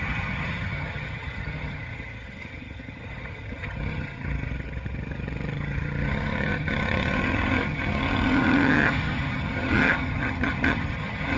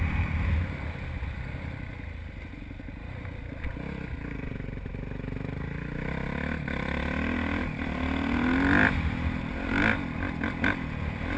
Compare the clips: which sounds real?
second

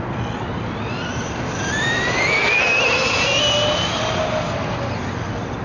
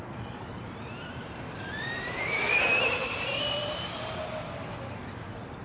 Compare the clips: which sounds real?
first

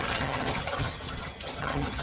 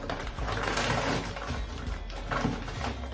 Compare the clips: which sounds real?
second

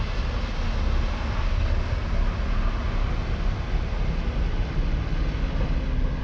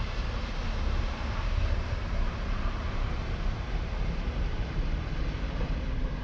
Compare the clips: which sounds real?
first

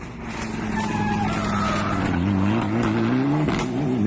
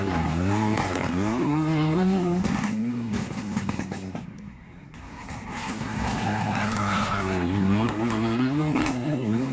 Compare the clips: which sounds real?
first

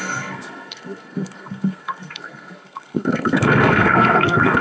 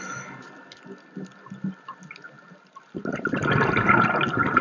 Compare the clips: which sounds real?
second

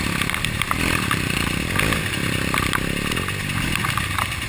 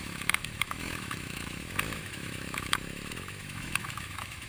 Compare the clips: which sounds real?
first